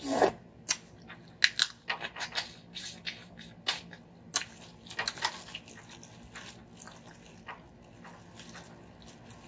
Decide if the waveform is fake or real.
real